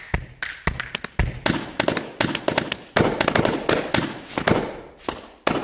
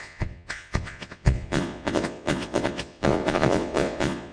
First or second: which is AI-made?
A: second